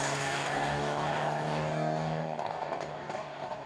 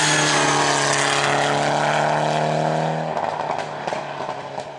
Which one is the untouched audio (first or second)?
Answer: second